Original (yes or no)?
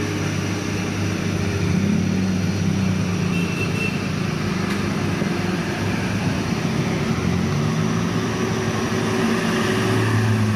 yes